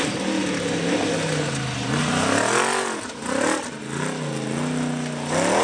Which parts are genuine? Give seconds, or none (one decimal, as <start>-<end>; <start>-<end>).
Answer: 0.0-5.6